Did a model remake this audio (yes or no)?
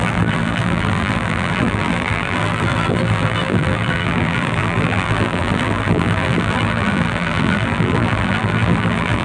yes